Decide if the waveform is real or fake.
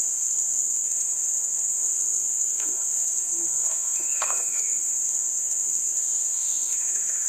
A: fake